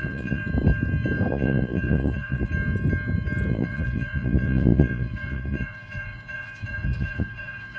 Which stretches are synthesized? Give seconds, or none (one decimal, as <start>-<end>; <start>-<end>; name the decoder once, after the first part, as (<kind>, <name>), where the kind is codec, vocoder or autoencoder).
0.0-0.4 (vocoder, Vocos); 1.3-2.5; 3.5-7.8